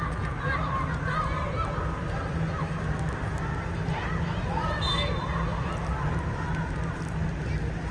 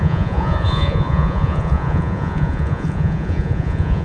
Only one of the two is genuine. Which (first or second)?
first